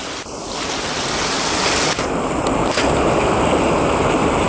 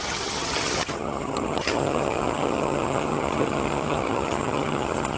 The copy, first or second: second